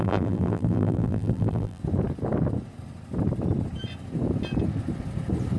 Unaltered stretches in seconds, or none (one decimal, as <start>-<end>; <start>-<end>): 1.8-5.6